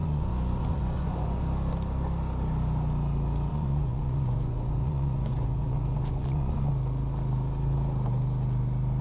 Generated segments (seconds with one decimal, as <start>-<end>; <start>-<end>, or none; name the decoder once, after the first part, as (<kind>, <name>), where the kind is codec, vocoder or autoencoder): 0.0-1.4 (vocoder, Vocos); 3.5-6.7